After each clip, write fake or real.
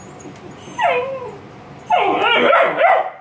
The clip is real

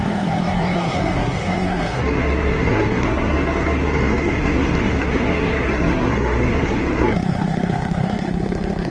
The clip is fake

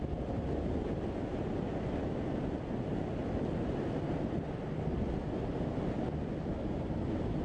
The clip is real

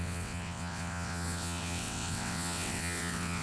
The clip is fake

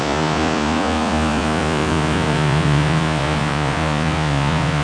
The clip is fake